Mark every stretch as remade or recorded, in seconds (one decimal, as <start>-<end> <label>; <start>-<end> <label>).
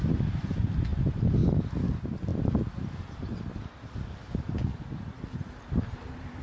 0.0-6.4 recorded